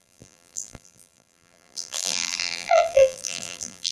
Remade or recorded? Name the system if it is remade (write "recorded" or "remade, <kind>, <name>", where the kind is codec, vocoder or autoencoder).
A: remade, vocoder, BigVGAN v2